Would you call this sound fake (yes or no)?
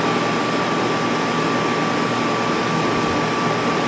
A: no